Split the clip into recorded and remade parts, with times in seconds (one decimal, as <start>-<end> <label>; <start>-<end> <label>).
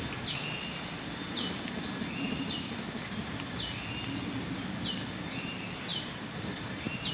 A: 0.0-5.9 recorded; 5.9-7.1 remade